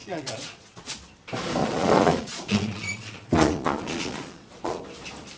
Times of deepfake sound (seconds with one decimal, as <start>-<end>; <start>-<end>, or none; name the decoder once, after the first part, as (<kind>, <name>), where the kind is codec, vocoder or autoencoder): 0.0-0.9 (vocoder, Vocos); 1.6-4.8